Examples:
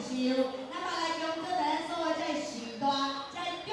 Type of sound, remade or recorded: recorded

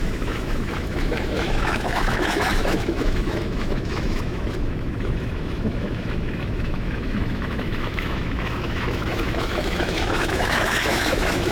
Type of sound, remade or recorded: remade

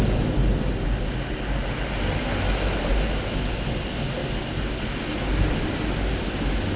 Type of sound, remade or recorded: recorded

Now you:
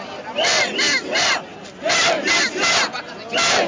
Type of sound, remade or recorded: recorded